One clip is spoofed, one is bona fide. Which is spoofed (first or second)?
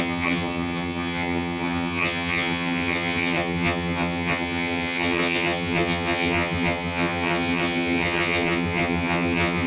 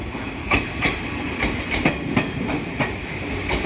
first